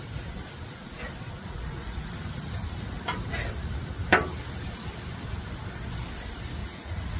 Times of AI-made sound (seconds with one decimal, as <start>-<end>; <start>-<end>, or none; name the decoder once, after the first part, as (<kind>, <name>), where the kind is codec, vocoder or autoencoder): 1.4-2.1 (vocoder, Vocos); 6.6-7.2